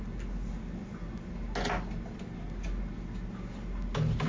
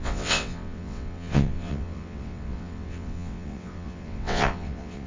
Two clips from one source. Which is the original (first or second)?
first